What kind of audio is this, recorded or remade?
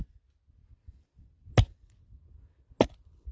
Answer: recorded